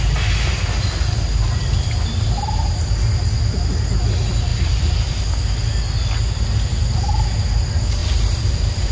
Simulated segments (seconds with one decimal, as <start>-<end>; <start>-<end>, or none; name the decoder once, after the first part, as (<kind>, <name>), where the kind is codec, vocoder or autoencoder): 4.5-5.2 (vocoder, BigVGAN v2); 8.0-8.9